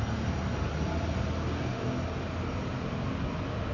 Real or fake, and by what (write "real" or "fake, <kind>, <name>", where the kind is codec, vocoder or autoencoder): real